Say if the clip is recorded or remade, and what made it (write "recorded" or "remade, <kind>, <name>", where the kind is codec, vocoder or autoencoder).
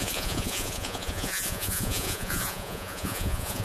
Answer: remade, vocoder, Vocos